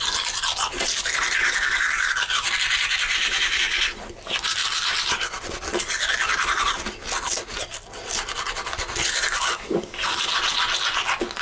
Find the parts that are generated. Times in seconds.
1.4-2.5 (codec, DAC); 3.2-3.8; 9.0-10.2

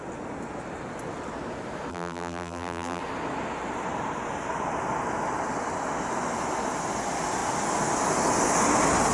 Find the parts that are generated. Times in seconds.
1.9-3.0 (vocoder, BigVGAN v2)

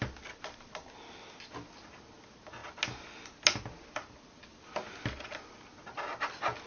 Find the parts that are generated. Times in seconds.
none

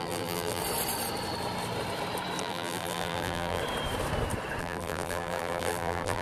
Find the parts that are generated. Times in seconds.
0.0-0.6 (vocoder, BigVGAN v2); 2.4-3.6; 4.6-6.2